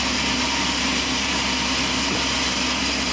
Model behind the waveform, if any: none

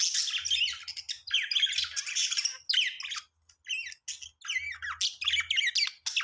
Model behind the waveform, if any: none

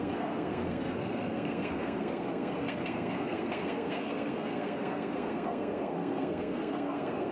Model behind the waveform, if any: codec, SNAC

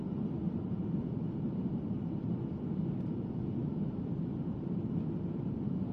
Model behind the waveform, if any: vocoder, BigVGAN v2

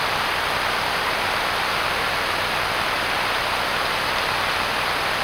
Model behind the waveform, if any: none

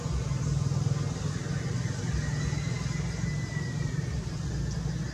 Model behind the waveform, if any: none